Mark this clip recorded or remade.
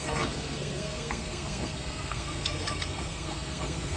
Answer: remade